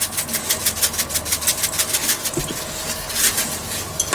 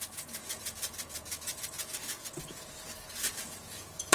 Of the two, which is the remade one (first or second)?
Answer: second